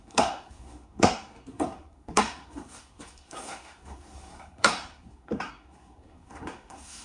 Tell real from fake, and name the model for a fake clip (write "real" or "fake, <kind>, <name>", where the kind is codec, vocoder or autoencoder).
fake, codec, SNAC